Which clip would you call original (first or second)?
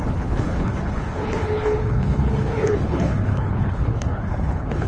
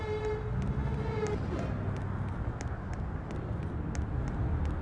second